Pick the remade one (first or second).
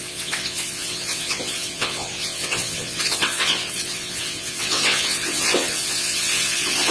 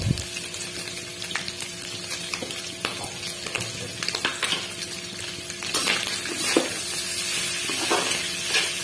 first